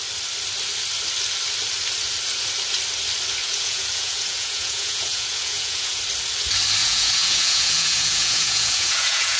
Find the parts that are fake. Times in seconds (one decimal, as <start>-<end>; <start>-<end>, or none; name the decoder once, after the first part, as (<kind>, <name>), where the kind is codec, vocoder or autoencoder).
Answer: 3.4-6.0 (vocoder, Vocos); 6.8-9.4